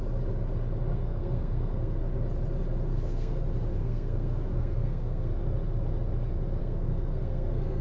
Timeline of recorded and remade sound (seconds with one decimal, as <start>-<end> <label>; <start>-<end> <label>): 0.0-0.9 recorded; 0.9-2.0 remade; 2.0-2.9 recorded; 2.9-3.4 remade; 3.4-3.8 recorded; 3.8-5.3 remade; 5.3-6.6 recorded; 6.6-7.8 remade

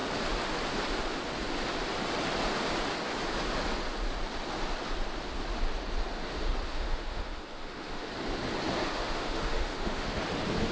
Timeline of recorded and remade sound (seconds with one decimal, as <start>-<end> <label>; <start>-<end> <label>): 0.0-6.7 recorded; 6.7-8.1 remade; 8.1-8.9 recorded; 8.9-10.2 remade; 10.2-10.7 recorded

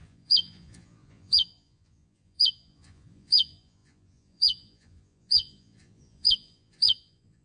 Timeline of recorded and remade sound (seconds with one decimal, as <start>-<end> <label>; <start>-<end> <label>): 0.0-7.4 remade

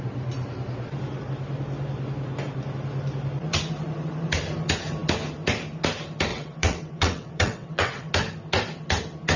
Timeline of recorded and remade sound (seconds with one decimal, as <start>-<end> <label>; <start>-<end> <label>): 0.0-6.3 recorded; 6.3-8.1 remade; 8.1-9.4 recorded